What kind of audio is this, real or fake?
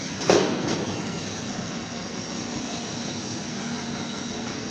fake